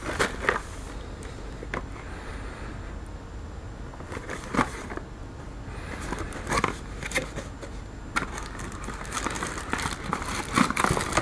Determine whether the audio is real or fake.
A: real